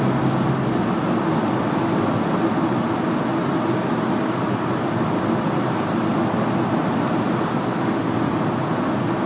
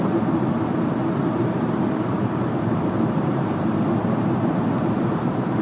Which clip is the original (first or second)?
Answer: first